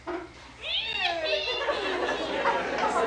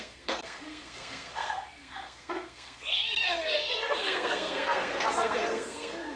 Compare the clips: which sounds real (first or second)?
first